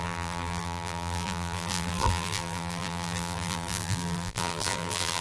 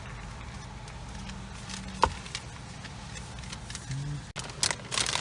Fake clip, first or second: first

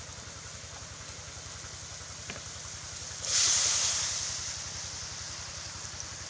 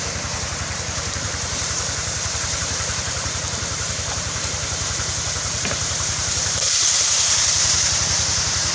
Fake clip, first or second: second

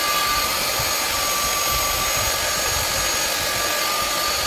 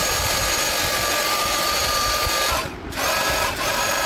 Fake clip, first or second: second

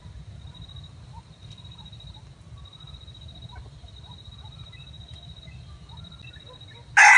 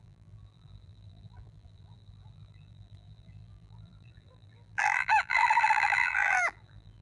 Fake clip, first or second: second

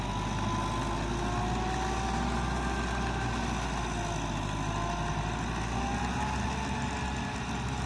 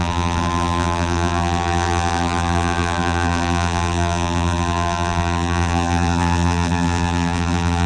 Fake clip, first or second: second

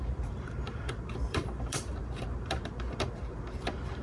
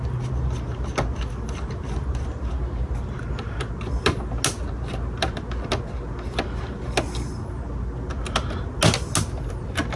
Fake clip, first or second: first